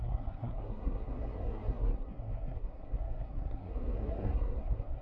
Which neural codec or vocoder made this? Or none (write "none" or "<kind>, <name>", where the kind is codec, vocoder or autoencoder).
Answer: codec, SNAC